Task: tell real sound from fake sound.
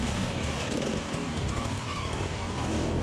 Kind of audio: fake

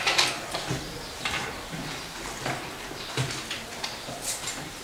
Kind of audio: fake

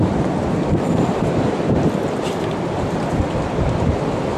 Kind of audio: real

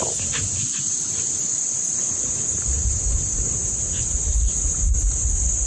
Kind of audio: real